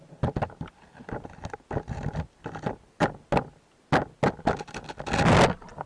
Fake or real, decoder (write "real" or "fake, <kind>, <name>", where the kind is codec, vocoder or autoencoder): real